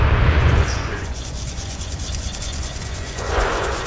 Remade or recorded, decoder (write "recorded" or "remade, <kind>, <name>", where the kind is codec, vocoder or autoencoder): remade, vocoder, Vocos